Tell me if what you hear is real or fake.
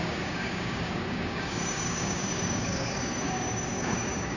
fake